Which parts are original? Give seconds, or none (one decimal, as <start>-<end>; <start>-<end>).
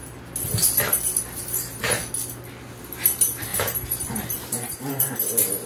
0.0-0.9; 2.1-3.5; 5.0-5.7